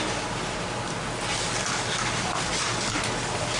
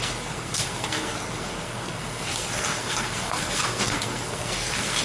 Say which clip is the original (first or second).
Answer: first